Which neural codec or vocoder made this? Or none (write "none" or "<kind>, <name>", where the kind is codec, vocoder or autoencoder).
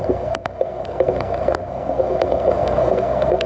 codec, SNAC